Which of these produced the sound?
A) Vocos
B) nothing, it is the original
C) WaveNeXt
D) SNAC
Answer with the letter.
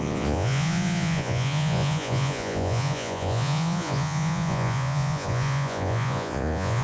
A